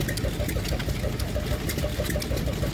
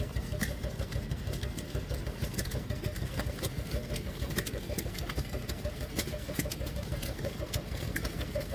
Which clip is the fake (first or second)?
second